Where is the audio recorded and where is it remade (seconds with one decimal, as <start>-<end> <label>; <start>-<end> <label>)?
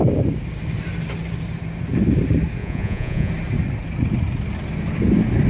0.0-2.6 recorded; 2.6-3.3 remade; 3.3-5.5 recorded